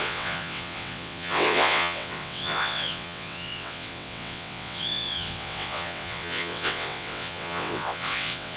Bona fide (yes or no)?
no